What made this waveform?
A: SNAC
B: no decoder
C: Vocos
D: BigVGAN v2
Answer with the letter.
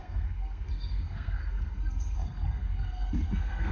A